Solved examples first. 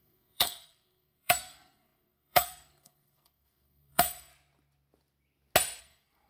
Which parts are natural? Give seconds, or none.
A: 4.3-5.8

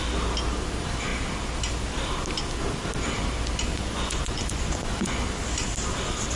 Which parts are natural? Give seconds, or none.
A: 0.0-3.7; 5.2-6.3

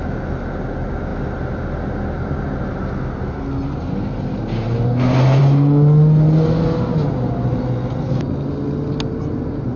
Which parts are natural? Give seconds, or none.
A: 0.0-9.8